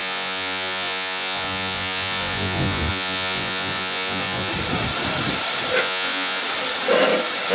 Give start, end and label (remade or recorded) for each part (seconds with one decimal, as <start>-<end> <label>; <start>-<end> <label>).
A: 0.0-4.5 remade; 4.5-5.8 recorded; 5.8-6.4 remade; 6.4-7.5 recorded